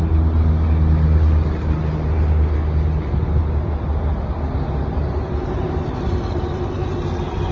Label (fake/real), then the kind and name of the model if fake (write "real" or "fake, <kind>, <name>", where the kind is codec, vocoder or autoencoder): real